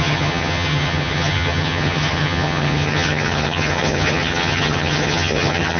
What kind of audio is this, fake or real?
fake